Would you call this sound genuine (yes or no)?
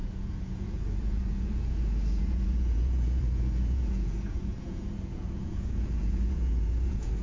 no